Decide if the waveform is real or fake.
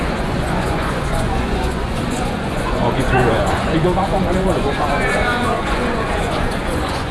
fake